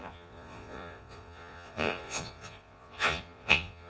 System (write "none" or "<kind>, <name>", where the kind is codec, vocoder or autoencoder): vocoder, Vocos